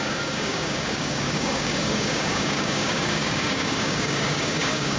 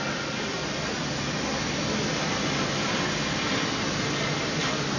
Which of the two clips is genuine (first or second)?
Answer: second